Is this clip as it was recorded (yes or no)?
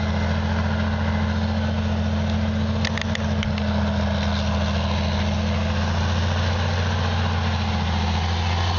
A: yes